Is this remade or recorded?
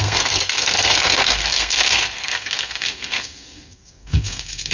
remade